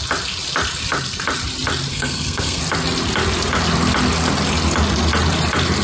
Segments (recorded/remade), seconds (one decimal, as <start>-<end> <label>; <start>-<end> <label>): 0.0-1.9 recorded; 1.9-2.6 remade; 2.6-5.8 recorded